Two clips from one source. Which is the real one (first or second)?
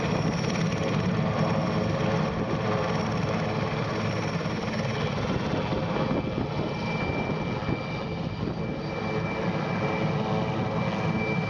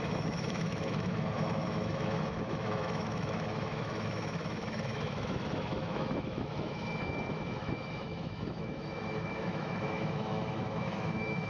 first